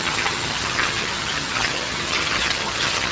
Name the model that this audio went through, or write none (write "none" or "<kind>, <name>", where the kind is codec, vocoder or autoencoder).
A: vocoder, HiFi-GAN